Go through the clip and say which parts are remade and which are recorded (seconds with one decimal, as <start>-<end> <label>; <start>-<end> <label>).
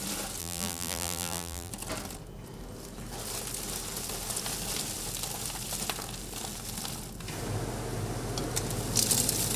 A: 0.0-0.4 recorded; 0.4-1.7 remade; 1.7-9.6 recorded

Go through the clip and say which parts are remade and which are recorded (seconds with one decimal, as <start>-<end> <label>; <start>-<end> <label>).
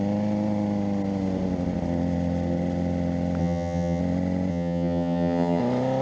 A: 0.0-3.4 recorded; 3.4-4.0 remade; 4.0-4.5 recorded; 4.5-5.6 remade; 5.6-6.0 recorded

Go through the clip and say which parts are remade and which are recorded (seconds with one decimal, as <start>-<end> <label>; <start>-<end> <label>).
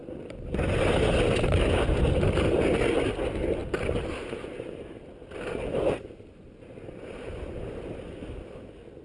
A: 0.0-9.0 recorded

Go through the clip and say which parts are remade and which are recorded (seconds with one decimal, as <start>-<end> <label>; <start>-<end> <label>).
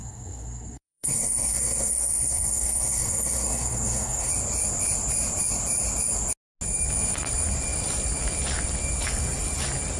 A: 0.0-4.3 remade; 4.3-10.0 recorded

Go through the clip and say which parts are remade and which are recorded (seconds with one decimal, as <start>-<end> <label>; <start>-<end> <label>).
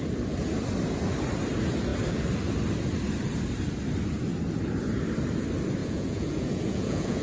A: 0.0-5.8 recorded; 5.8-7.2 remade